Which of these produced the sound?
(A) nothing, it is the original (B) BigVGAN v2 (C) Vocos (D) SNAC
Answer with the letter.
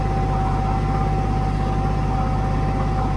A